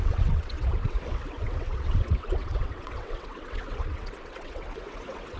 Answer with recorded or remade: remade